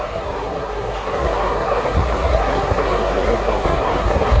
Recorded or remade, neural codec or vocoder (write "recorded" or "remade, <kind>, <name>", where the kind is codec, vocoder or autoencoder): remade, codec, SNAC